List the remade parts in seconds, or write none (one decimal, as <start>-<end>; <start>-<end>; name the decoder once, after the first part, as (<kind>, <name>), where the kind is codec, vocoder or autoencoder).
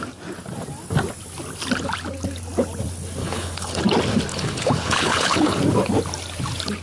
3.2-3.8 (codec, HILCodec); 4.3-5.6